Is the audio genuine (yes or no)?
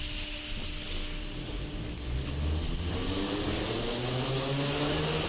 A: yes